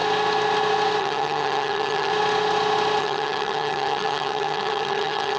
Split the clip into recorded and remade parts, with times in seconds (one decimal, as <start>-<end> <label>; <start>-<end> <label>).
0.0-1.0 recorded; 1.0-2.1 remade; 2.1-3.0 recorded; 3.0-5.4 remade